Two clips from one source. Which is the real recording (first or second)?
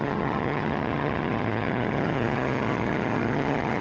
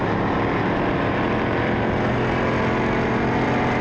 second